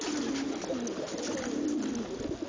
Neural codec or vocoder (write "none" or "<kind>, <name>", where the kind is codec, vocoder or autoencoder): none